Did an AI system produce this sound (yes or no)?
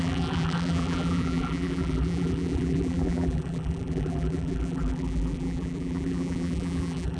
yes